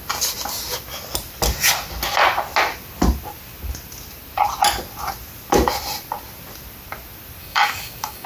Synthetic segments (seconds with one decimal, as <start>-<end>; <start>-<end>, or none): 7.4-8.3

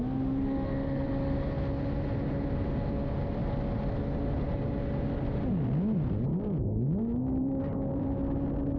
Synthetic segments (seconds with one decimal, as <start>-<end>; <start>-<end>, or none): 6.3-7.4

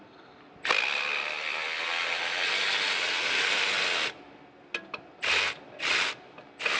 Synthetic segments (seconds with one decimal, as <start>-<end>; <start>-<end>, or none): none